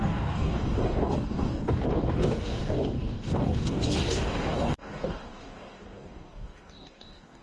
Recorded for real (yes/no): no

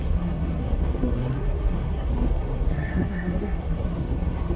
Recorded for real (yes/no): no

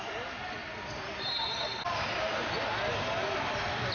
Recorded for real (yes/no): yes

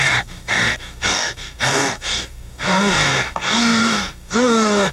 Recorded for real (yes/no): no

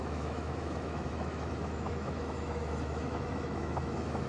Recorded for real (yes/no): no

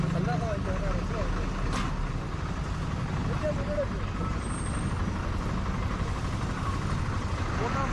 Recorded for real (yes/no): yes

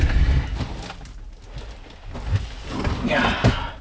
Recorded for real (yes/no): yes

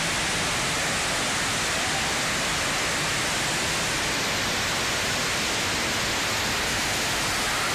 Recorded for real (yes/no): yes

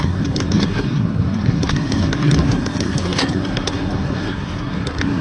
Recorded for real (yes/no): no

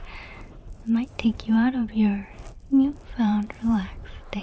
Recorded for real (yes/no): no